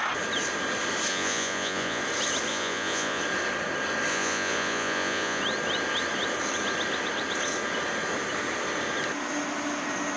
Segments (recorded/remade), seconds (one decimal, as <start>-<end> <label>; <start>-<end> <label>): 0.0-1.1 recorded; 1.1-2.0 remade; 2.0-2.5 recorded; 2.5-3.2 remade; 3.2-4.1 recorded; 4.1-5.4 remade; 5.4-10.2 recorded